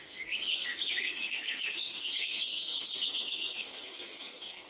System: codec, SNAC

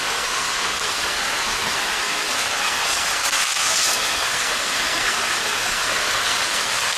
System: codec, SNAC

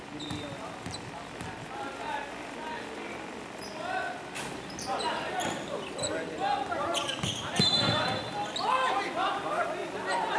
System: none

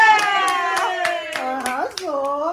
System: none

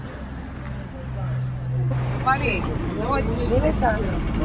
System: none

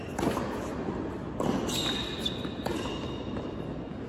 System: none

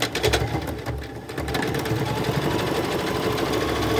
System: none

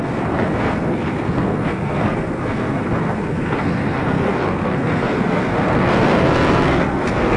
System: codec, SNAC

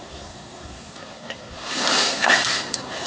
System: codec, SNAC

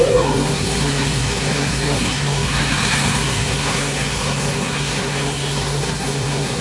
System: codec, SNAC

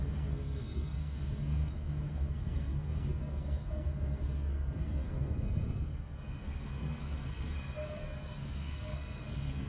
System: codec, SNAC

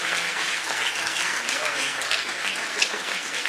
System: codec, SNAC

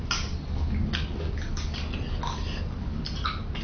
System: none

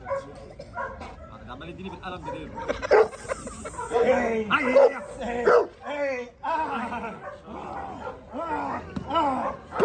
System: none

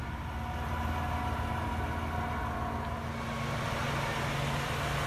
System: none